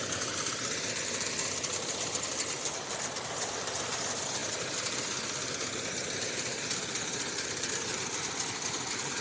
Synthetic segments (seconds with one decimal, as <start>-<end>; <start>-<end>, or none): 0.0-4.4; 6.3-9.2